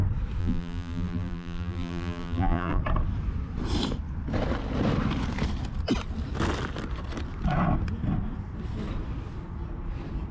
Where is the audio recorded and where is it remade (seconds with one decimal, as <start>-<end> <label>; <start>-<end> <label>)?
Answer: 0.0-0.4 recorded; 0.4-2.8 remade; 2.8-10.3 recorded